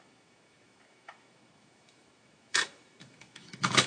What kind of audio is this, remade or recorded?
remade